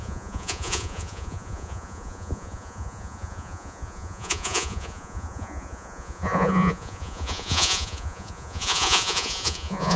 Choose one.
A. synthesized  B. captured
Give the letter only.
A